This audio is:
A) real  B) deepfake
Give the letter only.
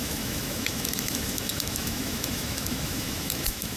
B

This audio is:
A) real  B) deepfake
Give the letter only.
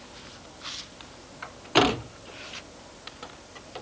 A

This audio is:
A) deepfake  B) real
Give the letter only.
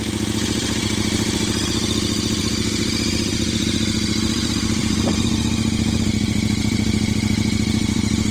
A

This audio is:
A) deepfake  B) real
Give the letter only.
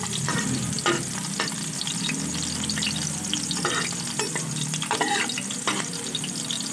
B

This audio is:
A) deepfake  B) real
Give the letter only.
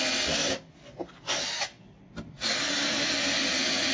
B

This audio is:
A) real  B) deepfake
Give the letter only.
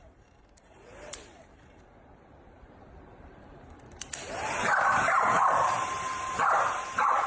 B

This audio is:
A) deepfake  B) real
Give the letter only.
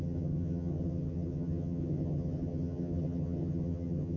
A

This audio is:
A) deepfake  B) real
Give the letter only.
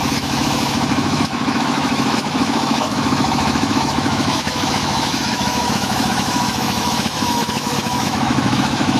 A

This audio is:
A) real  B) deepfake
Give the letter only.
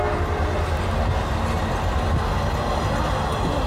A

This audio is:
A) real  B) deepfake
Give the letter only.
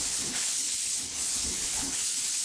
B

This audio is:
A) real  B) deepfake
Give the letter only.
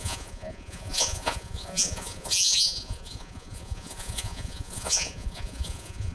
B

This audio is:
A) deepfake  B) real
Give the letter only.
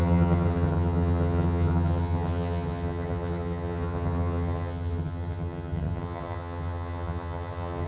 A